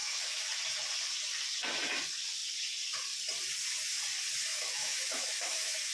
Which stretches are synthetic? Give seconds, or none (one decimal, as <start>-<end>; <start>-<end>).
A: 0.0-0.5; 4.5-5.9

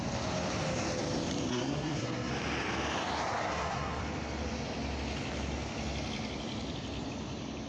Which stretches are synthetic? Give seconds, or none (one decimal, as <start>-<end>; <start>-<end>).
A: 1.5-2.3; 3.4-4.0

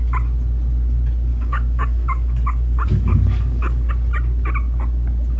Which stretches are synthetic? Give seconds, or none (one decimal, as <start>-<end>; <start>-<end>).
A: 1.3-3.9

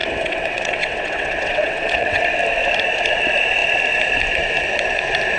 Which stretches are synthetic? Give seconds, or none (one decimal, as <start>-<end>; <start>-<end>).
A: 0.0-2.2

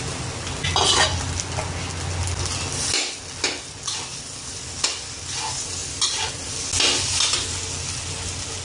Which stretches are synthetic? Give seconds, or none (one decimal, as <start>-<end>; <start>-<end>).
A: none

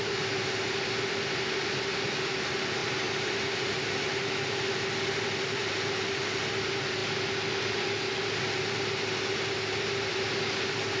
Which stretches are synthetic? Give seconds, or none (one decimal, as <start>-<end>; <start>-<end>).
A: none

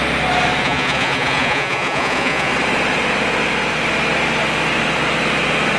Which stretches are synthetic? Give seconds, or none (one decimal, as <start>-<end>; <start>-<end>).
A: 0.6-2.5